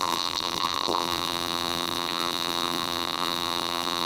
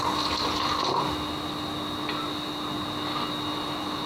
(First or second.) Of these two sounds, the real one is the second